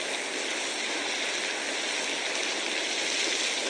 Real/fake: real